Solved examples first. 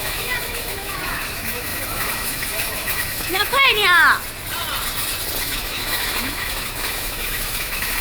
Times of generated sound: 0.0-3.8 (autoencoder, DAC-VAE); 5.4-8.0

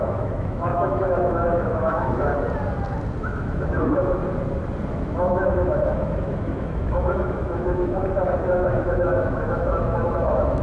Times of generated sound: 0.0-2.3 (autoencoder, DAC-VAE); 3.2-4.2; 4.9-8.0; 8.5-10.6

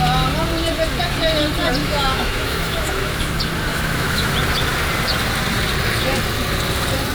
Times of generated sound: 1.8-3.2 (autoencoder, DAC-VAE); 3.7-4.3